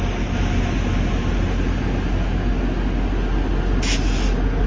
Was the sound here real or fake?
real